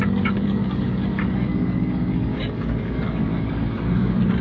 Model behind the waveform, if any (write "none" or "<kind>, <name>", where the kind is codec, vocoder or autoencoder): codec, DAC